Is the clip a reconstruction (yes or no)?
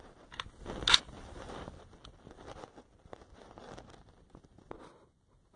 no